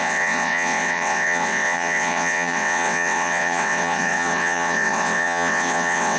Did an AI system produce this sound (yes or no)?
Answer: yes